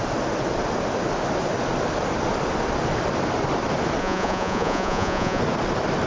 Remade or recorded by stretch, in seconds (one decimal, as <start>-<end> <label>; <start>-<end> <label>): 0.0-4.0 recorded; 4.0-5.4 remade; 5.4-6.1 recorded